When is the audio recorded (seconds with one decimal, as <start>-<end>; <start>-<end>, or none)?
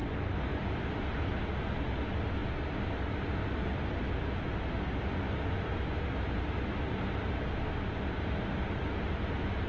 0.0-9.7